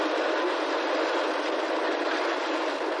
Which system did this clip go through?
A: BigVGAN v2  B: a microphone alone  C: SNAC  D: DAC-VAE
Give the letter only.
B